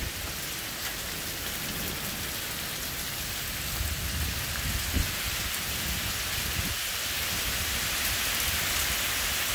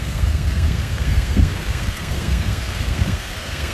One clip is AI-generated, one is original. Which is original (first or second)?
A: first